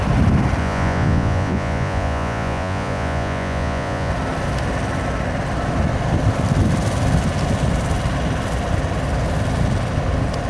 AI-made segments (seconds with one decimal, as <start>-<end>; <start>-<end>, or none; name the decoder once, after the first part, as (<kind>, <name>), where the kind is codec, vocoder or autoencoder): 0.6-4.1 (vocoder, Vocos)